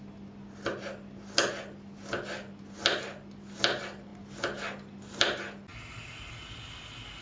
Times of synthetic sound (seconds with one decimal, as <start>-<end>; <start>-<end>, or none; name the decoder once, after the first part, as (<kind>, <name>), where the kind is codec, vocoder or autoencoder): none